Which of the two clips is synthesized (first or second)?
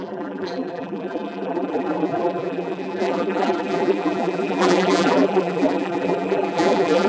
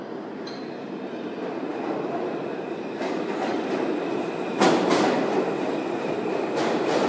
first